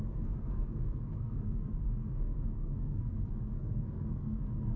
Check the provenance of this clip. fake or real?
fake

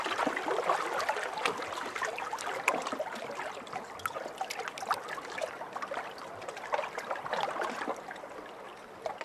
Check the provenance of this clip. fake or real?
real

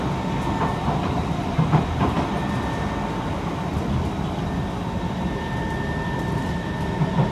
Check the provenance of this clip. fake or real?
real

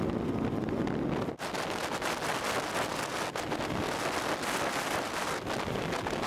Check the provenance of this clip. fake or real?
real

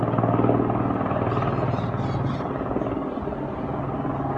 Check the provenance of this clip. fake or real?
real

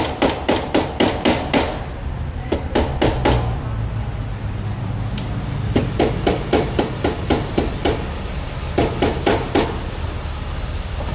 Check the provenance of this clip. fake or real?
real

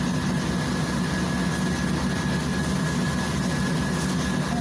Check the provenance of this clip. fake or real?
real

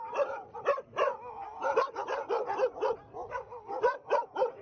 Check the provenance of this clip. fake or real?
real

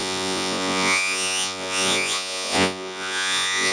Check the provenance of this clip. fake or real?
fake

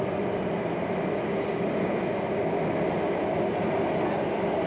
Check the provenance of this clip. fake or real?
real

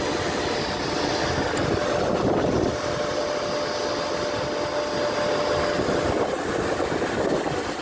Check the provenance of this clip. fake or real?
real